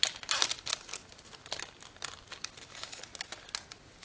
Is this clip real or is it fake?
real